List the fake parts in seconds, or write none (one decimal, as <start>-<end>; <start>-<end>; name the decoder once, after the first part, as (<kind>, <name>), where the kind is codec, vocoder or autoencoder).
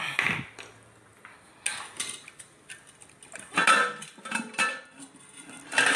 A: none